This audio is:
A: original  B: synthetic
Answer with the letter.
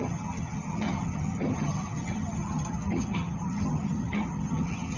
B